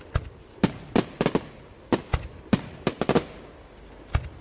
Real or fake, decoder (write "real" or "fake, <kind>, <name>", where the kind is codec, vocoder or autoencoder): real